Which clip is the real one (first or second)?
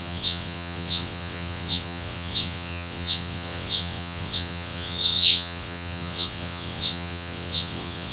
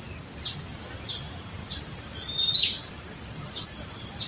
second